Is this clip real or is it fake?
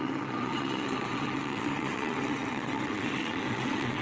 fake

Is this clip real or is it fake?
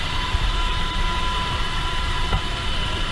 fake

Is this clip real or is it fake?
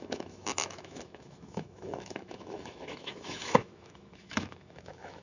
fake